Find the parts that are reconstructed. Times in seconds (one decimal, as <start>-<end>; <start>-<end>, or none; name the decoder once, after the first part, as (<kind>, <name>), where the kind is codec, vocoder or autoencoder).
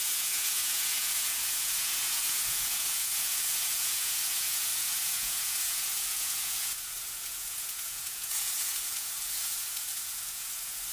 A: 0.0-10.9 (vocoder, Vocos)